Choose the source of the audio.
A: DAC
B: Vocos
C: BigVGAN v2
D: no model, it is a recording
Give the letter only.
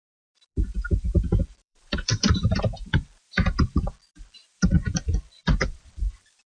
C